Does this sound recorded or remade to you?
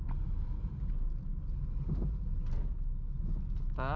recorded